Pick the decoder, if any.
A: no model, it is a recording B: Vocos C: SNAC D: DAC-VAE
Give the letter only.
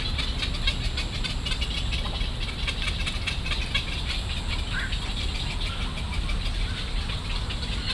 A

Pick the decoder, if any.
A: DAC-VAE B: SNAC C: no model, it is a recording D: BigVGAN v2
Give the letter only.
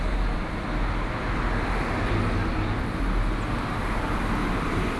C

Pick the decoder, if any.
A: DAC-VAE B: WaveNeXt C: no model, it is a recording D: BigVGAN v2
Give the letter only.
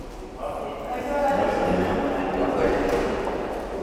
C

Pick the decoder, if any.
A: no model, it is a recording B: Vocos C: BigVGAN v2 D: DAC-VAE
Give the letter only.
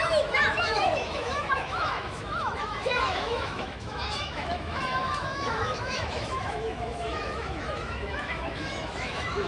D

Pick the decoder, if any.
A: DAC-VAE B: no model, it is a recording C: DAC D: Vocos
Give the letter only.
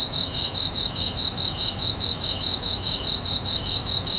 A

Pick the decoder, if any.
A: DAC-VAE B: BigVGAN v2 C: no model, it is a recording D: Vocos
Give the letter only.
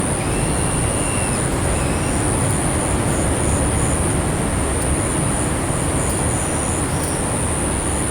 C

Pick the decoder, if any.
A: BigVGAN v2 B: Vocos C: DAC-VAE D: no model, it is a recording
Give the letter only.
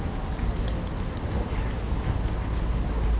D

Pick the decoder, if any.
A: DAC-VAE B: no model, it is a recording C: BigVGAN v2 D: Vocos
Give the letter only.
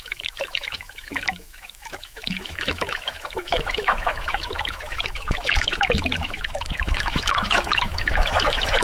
A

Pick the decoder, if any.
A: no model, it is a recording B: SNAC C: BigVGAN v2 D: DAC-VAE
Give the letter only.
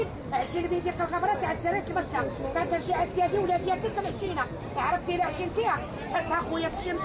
A